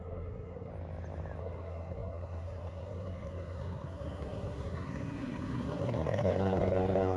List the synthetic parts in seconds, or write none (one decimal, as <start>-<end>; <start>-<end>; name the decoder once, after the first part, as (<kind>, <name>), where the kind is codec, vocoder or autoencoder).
0.0-0.7 (codec, SNAC); 1.4-7.2